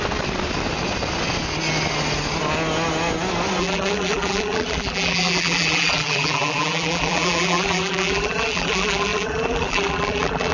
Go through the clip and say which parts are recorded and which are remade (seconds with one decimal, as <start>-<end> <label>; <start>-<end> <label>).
0.0-3.6 recorded; 3.6-10.5 remade